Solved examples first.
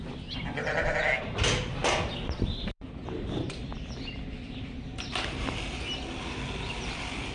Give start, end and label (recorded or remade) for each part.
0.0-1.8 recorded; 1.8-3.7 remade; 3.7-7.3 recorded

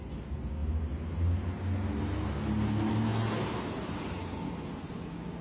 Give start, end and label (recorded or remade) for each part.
0.0-5.4 recorded

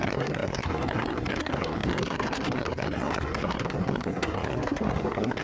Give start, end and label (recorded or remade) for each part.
0.0-5.4 remade

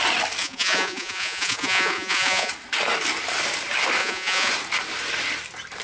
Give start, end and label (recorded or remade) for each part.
0.0-0.4 recorded; 0.4-2.5 remade; 2.5-4.0 recorded; 4.0-4.5 remade; 4.5-5.8 recorded

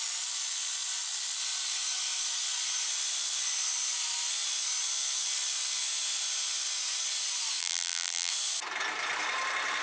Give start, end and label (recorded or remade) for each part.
0.0-7.6 recorded; 7.6-8.3 remade; 8.3-9.8 recorded

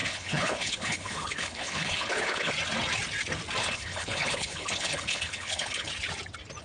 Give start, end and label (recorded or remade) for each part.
0.0-2.5 remade; 2.5-3.6 recorded; 3.6-5.9 remade; 5.9-6.6 recorded

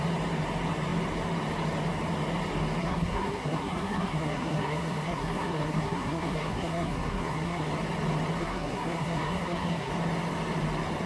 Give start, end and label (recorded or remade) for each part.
0.0-2.8 recorded; 2.8-7.7 remade; 7.7-8.4 recorded; 8.4-9.9 remade; 9.9-11.1 recorded